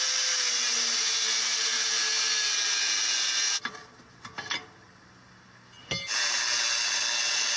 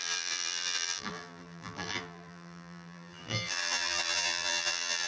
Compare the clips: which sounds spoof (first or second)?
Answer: second